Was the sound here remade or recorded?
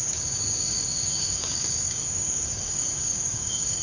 remade